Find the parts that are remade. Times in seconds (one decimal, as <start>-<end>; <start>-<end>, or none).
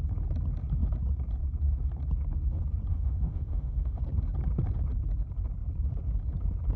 2.9-4.0